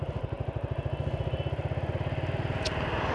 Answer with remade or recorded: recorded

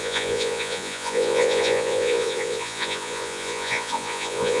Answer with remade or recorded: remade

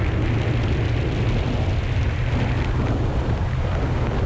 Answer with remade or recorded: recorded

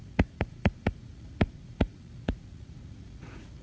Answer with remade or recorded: remade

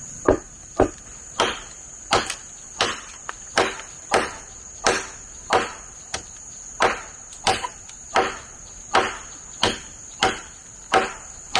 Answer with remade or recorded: recorded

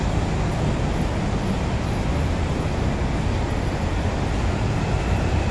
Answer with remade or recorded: recorded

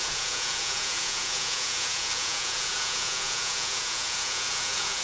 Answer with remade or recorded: remade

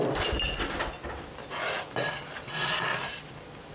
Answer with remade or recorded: recorded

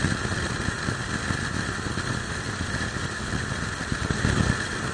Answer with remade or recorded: recorded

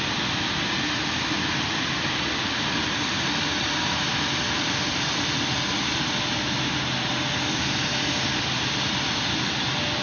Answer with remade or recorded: recorded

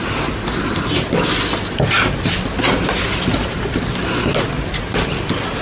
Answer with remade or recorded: recorded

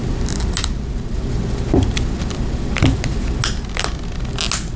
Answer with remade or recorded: recorded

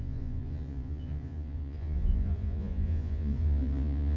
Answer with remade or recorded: remade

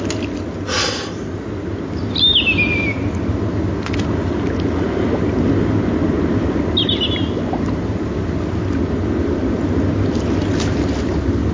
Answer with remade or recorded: recorded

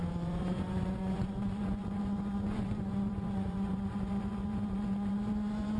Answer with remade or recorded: remade